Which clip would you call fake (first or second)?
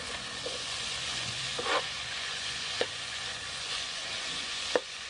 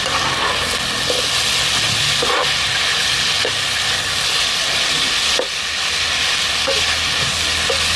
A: first